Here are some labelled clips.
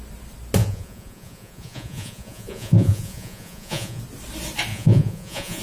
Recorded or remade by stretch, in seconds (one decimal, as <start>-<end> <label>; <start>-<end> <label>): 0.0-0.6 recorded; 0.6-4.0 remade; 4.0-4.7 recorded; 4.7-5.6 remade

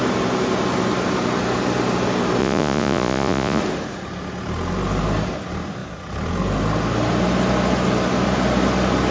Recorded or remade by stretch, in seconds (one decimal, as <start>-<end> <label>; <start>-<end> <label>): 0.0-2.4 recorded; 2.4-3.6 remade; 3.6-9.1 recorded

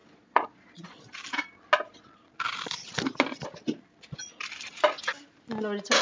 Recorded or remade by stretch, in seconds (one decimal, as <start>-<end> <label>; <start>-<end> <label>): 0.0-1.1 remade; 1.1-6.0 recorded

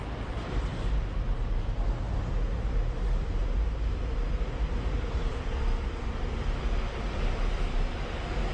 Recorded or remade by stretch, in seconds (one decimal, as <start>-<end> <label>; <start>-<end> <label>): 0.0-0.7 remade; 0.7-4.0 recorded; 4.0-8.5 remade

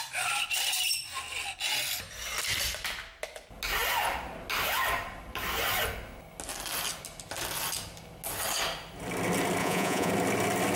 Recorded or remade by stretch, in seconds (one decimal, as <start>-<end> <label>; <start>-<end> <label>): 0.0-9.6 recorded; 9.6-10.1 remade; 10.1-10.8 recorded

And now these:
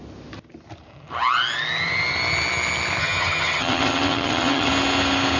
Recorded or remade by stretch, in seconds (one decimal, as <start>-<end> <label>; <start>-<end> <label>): 0.0-3.0 recorded; 3.0-4.7 remade; 4.7-5.4 recorded

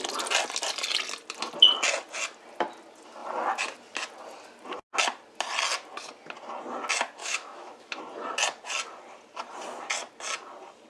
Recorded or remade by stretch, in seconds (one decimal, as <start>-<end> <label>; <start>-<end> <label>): 0.0-7.2 recorded; 7.2-8.0 remade; 8.0-10.9 recorded

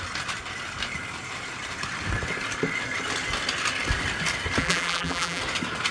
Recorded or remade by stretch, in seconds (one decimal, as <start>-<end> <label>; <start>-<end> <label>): 0.0-4.6 recorded; 4.6-5.4 remade; 5.4-5.9 recorded